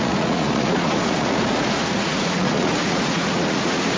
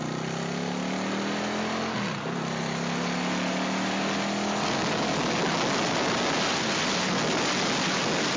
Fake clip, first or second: first